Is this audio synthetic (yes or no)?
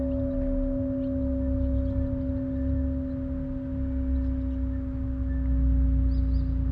no